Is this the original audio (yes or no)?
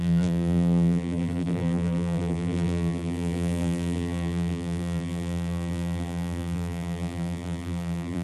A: no